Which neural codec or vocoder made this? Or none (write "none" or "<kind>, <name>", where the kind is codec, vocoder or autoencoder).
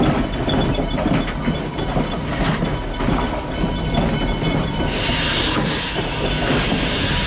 none